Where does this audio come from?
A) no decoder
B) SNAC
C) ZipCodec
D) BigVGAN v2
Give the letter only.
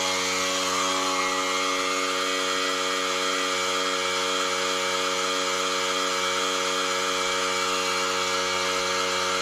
A